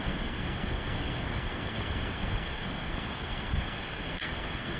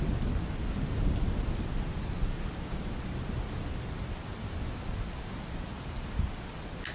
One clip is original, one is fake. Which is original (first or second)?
second